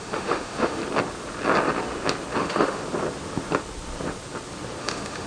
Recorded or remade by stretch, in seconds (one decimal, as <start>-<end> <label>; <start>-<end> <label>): 0.0-0.8 remade; 0.8-2.4 recorded; 2.4-2.8 remade; 2.8-4.8 recorded; 4.8-5.3 remade